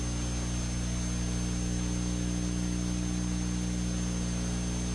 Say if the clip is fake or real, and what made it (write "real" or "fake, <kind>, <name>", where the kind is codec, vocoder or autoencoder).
real